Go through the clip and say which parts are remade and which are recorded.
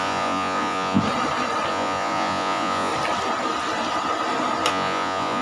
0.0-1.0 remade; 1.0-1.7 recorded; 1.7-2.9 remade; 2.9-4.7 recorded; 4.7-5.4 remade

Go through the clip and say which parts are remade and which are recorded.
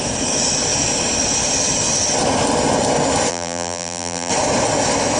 0.0-3.3 recorded; 3.3-4.3 remade; 4.3-5.2 recorded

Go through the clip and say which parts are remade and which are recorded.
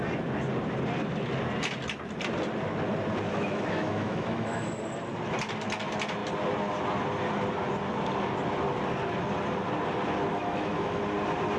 0.0-3.3 recorded; 3.3-4.8 remade; 4.8-10.3 recorded; 10.3-11.0 remade; 11.0-11.6 recorded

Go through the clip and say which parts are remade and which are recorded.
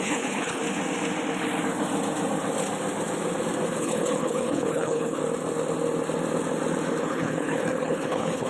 0.0-0.6 remade; 0.6-3.8 recorded; 3.8-5.2 remade; 5.2-7.0 recorded; 7.0-8.5 remade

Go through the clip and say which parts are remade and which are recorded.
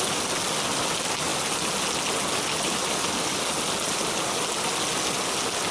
0.0-5.7 recorded